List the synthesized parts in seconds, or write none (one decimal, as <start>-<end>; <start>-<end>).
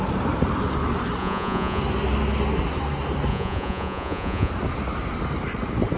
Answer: 1.2-1.8; 3.3-4.5